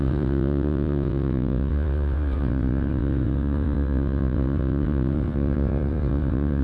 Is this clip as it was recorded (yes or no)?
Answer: no